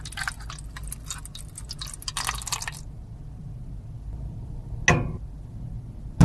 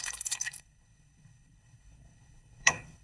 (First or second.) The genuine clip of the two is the first